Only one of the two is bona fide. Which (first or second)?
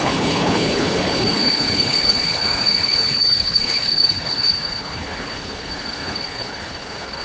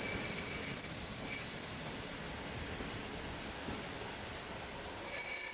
second